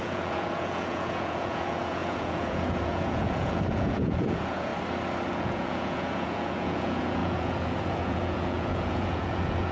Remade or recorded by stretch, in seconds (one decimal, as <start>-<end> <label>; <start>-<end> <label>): 0.0-4.7 remade; 4.7-5.3 recorded; 5.3-9.7 remade